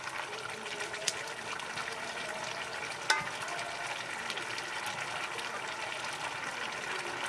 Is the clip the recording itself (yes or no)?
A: yes